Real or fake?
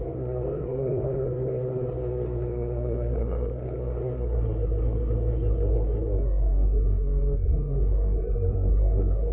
fake